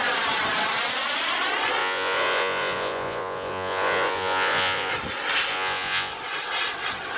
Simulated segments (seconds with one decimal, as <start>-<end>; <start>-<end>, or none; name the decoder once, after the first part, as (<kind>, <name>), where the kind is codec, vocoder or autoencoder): 1.8-4.9 (vocoder, Vocos); 5.5-6.1